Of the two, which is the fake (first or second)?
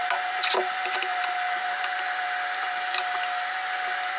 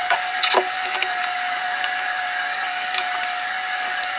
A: second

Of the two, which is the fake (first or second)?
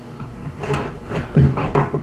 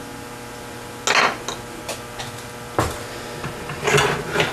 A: first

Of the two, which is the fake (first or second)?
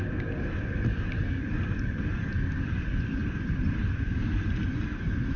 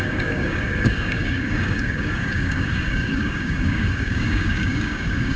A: second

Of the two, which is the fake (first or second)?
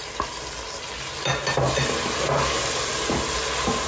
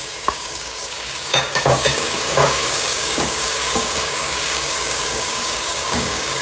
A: second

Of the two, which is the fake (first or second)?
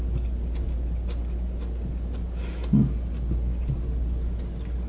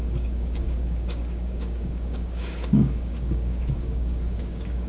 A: second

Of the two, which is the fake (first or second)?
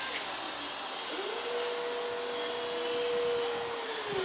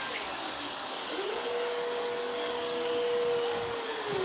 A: second